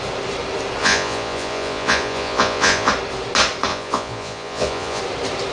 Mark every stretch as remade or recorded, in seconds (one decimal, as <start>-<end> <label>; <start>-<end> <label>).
0.0-0.8 recorded; 0.8-2.9 remade; 2.9-3.7 recorded; 3.7-5.0 remade; 5.0-5.5 recorded